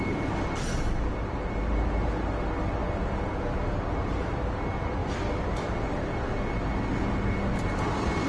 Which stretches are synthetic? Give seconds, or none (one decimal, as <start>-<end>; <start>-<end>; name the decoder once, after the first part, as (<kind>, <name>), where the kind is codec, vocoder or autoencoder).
none